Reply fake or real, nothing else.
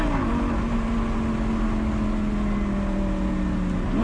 real